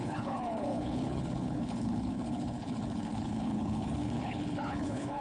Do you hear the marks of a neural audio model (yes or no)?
yes